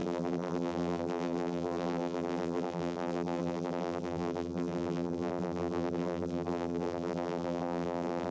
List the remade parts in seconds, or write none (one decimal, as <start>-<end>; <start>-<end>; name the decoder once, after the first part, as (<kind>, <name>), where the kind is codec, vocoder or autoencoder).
0.0-8.3 (vocoder, BigVGAN v2)